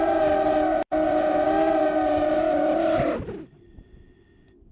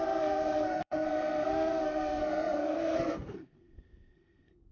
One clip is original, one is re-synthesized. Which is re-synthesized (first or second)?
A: second